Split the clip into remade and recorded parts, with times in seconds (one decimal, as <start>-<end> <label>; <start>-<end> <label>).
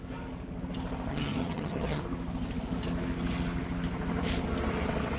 0.0-1.1 recorded; 1.1-2.0 remade; 2.0-5.2 recorded